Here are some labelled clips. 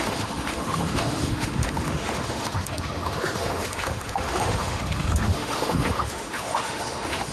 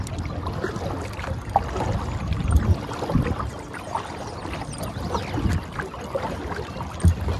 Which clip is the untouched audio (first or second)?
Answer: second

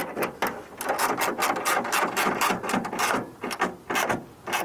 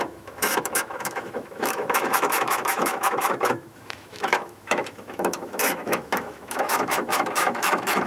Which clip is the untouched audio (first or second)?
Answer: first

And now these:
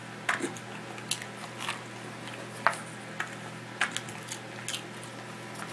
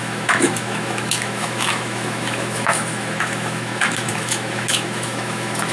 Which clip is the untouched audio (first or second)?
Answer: first